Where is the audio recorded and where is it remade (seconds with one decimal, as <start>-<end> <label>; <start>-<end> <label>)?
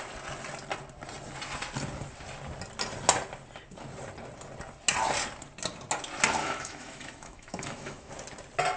0.0-6.4 recorded; 6.4-8.1 remade; 8.1-8.8 recorded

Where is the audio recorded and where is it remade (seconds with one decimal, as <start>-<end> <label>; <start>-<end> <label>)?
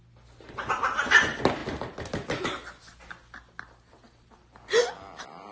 0.0-5.5 recorded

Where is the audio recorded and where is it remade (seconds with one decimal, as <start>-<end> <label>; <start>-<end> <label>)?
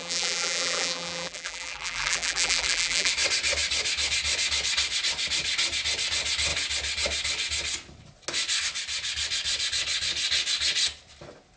0.0-3.1 remade; 3.1-11.6 recorded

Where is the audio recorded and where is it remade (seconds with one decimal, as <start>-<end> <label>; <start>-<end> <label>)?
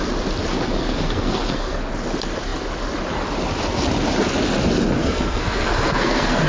0.0-0.5 recorded; 0.5-1.9 remade; 1.9-5.0 recorded; 5.0-6.5 remade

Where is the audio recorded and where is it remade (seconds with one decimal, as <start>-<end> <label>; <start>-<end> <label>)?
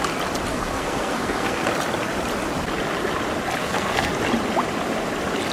0.0-0.5 recorded; 0.5-1.7 remade; 1.7-3.6 recorded; 3.6-4.1 remade; 4.1-5.5 recorded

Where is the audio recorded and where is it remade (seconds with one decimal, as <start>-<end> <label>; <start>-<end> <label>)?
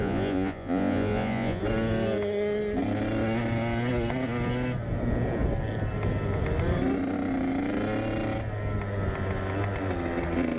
0.0-1.6 remade; 1.6-10.6 recorded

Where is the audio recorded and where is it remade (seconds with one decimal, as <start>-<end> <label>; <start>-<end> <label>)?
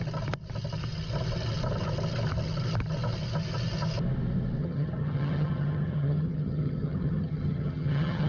0.0-4.6 recorded; 4.6-8.3 remade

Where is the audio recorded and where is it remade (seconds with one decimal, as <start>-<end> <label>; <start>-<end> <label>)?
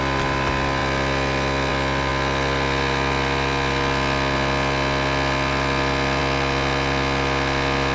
0.0-7.9 recorded